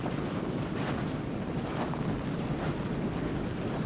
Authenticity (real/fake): real